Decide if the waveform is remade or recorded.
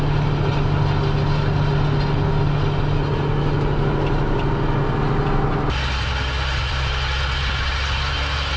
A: recorded